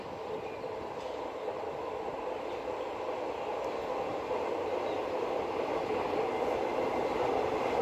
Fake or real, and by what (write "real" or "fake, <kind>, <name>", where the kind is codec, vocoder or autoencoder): real